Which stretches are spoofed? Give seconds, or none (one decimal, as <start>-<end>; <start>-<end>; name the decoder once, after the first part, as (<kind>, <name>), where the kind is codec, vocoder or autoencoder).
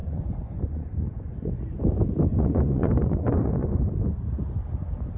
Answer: 0.0-1.6 (vocoder, Vocos); 2.3-3.8